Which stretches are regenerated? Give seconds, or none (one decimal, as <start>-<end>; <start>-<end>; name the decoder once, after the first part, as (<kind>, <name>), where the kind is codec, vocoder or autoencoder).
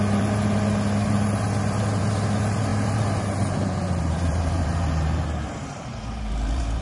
0.0-6.8 (vocoder, BigVGAN v2)